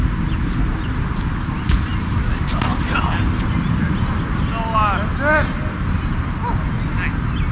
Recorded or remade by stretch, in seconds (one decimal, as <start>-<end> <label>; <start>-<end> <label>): 0.0-7.5 recorded